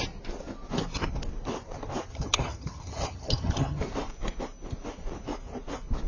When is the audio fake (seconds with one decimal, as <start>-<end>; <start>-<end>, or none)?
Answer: 2.1-3.8